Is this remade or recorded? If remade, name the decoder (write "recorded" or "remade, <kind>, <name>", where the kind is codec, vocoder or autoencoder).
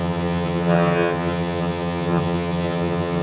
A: remade, vocoder, HiFi-GAN